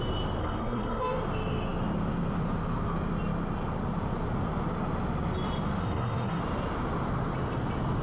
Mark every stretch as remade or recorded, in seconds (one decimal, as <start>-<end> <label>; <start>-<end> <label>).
0.0-0.4 recorded; 0.4-1.0 remade; 1.0-5.8 recorded; 5.8-6.4 remade; 6.4-8.0 recorded